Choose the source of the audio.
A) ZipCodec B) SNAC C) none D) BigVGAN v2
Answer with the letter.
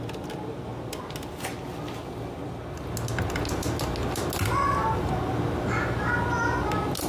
C